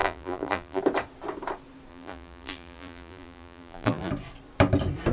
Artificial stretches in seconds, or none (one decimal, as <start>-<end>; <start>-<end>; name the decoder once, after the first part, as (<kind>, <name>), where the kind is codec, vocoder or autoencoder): 0.0-0.8 (vocoder, BigVGAN v2); 1.9-4.1